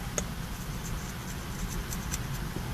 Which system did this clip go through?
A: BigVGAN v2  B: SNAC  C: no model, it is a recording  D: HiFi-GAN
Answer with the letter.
C